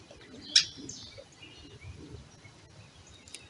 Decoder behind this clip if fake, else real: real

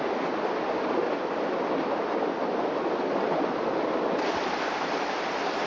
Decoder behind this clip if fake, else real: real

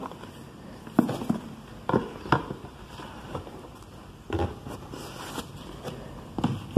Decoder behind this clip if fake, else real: real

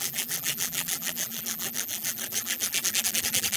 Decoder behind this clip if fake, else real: fake, vocoder, BigVGAN v2